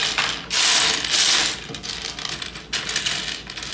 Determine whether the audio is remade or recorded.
recorded